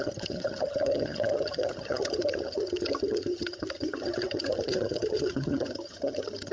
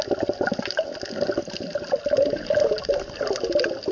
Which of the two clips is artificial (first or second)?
first